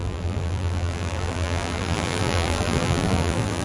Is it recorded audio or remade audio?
remade